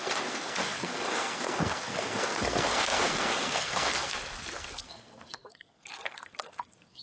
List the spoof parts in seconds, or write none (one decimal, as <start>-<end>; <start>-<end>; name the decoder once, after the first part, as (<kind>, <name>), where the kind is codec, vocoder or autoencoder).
0.0-7.0 (codec, SNAC)